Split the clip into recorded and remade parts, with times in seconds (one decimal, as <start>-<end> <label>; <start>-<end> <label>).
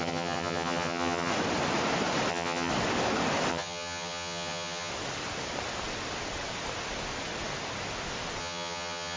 0.0-1.3 remade; 1.3-2.3 recorded; 2.3-2.7 remade; 2.7-3.5 recorded; 3.5-4.9 remade; 4.9-8.4 recorded; 8.4-9.2 remade